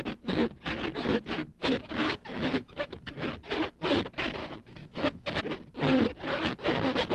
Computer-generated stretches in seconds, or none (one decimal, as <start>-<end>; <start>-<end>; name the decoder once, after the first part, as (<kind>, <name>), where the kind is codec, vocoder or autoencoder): 1.6-3.1 (autoencoder, DAC-VAE); 4.4-5.4